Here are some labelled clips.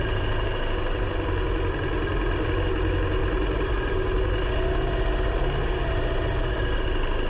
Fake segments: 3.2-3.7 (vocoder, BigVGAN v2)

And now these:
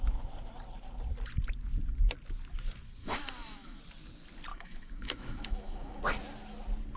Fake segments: 3.0-3.8 (autoencoder, DAC-VAE); 4.5-6.0

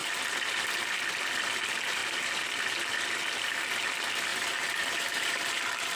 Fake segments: 4.3-5.5 (vocoder, BigVGAN v2)

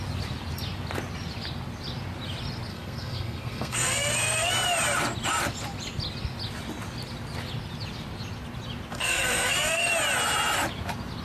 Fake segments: 2.7-4.5 (codec, SNAC); 8.9-9.9